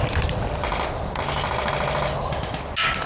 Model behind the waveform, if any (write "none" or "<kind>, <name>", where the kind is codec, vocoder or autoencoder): none